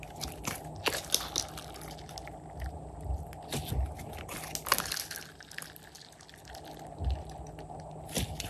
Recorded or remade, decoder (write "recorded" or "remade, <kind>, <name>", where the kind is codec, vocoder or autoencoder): recorded